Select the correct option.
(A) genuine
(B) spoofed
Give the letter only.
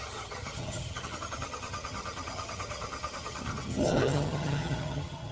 B